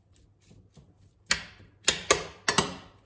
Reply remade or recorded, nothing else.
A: recorded